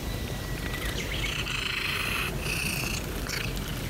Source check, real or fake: fake